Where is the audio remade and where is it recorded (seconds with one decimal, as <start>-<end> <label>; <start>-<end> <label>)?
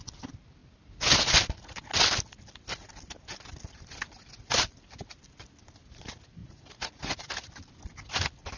0.0-6.4 recorded; 6.4-7.3 remade; 7.3-8.6 recorded